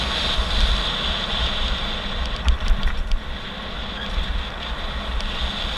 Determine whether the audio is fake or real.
real